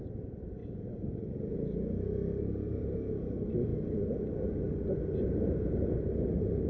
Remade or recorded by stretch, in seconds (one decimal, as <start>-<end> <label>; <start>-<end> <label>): 0.0-6.7 recorded

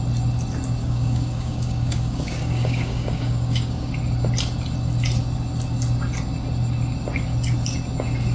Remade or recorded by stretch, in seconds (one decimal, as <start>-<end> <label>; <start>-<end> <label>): 0.0-0.8 recorded; 0.8-3.9 remade; 3.9-8.3 recorded

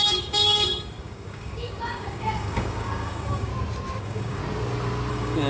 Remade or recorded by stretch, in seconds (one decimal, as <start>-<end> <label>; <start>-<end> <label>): 0.0-3.5 remade; 3.5-4.0 recorded; 4.0-4.4 remade; 4.4-5.1 recorded; 5.1-5.5 remade

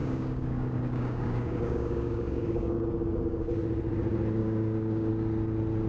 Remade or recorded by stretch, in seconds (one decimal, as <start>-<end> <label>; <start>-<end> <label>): 0.0-3.5 remade; 3.5-4.4 recorded; 4.4-5.1 remade; 5.1-5.9 recorded

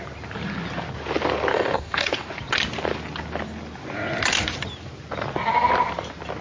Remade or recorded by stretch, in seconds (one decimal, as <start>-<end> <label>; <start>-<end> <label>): 0.0-1.5 recorded; 1.5-2.3 remade; 2.3-6.4 recorded

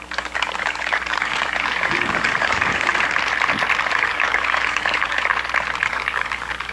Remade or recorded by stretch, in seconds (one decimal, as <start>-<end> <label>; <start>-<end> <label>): 0.0-2.9 remade; 2.9-3.9 recorded; 3.9-5.3 remade; 5.3-5.9 recorded; 5.9-6.7 remade

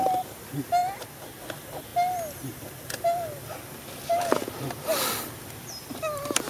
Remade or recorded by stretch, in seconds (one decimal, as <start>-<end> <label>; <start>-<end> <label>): 0.0-6.5 recorded

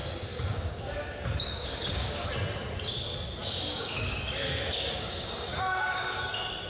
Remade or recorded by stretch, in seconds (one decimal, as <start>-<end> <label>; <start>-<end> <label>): 0.0-2.3 remade; 2.3-3.4 recorded; 3.4-6.3 remade; 6.3-6.7 recorded